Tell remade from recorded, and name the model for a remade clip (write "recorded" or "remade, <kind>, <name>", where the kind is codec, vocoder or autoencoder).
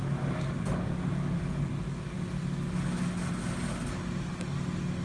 recorded